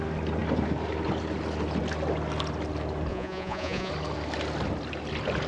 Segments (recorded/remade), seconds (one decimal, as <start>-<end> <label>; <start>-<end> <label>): 0.0-3.1 recorded; 3.1-3.9 remade; 3.9-5.5 recorded